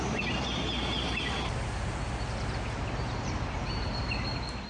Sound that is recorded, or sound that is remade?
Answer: recorded